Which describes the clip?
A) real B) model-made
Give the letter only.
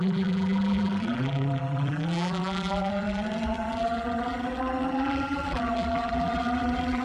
B